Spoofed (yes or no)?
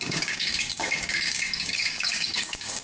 yes